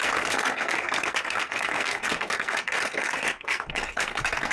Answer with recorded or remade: remade